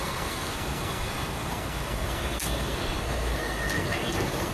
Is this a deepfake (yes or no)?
yes